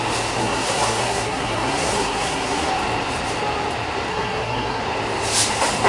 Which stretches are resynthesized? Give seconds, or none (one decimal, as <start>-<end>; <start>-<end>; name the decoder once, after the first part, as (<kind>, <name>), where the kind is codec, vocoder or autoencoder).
0.4-2.7 (codec, SNAC); 4.1-4.8